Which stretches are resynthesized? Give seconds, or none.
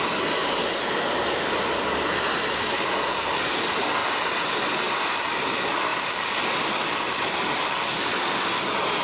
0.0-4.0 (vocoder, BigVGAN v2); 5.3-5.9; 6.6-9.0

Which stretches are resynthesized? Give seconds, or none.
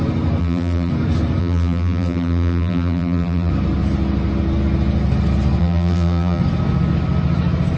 0.4-0.9 (vocoder, BigVGAN v2); 1.4-3.5; 5.6-6.4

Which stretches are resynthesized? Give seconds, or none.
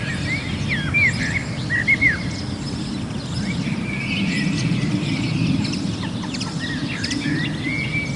1.4-5.1 (vocoder, BigVGAN v2); 6.8-7.4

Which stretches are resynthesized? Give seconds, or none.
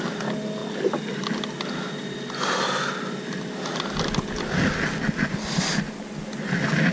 none